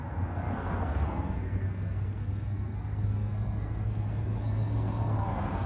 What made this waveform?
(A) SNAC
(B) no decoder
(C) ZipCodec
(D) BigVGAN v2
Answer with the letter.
A